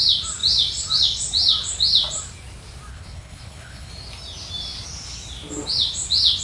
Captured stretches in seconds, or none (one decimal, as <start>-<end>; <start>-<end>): 0.0-2.9; 3.9-6.4